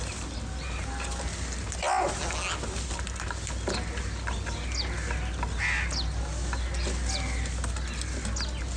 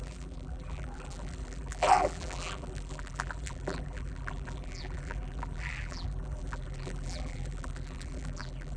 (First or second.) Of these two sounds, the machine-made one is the second